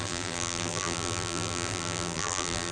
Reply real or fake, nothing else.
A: fake